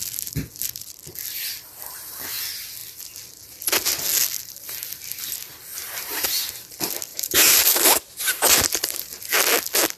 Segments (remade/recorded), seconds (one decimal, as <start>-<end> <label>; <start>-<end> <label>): 0.0-5.7 recorded; 5.7-6.5 remade; 6.5-7.1 recorded; 7.1-9.2 remade; 9.2-10.0 recorded